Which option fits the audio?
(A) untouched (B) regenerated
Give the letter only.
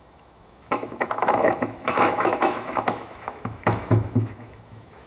B